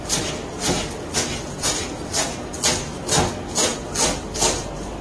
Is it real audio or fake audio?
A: real